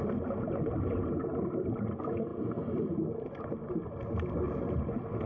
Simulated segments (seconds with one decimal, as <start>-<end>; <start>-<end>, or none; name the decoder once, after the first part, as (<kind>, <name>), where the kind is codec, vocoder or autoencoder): none